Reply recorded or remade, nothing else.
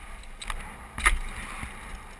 recorded